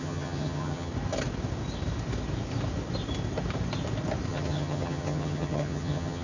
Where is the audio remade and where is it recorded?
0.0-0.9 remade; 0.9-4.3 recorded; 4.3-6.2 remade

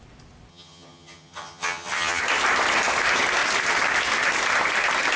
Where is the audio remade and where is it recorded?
0.0-0.5 recorded; 0.5-2.2 remade; 2.2-5.2 recorded

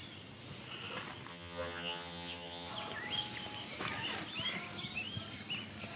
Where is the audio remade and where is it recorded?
0.0-1.3 recorded; 1.3-2.7 remade; 2.7-6.0 recorded